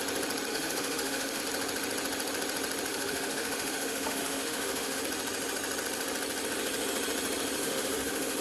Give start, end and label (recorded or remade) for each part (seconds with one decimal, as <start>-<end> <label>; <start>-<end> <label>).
0.0-0.5 recorded; 0.5-1.4 remade; 1.4-2.9 recorded; 2.9-5.0 remade; 5.0-7.6 recorded; 7.6-8.4 remade